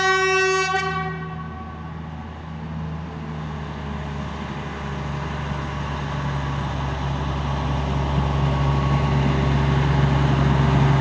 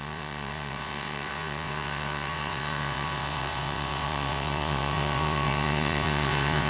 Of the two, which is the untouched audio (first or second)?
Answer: first